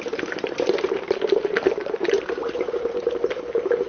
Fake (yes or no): yes